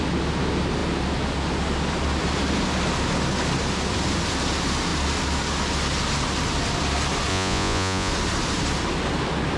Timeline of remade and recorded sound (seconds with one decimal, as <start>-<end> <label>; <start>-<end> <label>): 0.0-7.3 recorded; 7.3-8.1 remade; 8.1-9.6 recorded